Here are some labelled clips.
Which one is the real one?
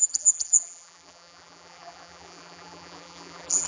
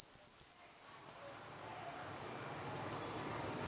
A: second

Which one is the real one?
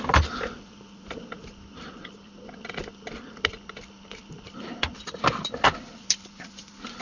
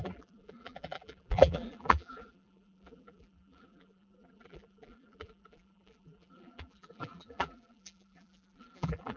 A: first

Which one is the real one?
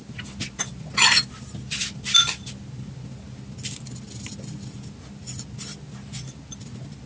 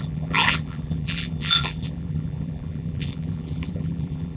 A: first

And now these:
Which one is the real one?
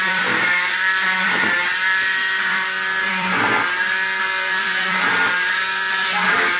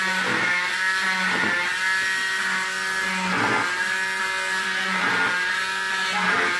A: second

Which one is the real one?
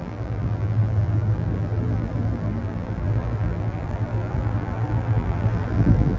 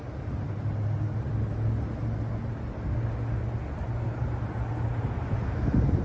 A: second